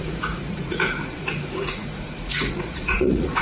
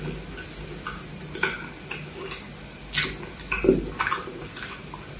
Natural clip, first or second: second